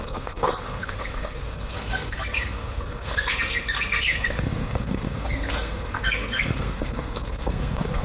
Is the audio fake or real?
fake